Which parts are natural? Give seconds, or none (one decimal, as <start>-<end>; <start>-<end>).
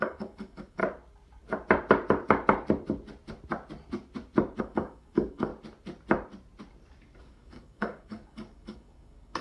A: 0.8-4.6; 5.5-7.2